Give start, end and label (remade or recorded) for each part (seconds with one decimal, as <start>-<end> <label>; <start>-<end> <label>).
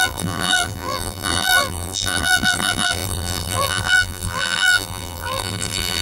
0.0-6.0 remade